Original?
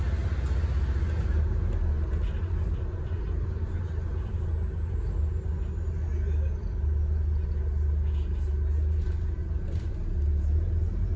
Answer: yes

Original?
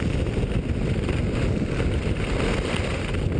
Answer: yes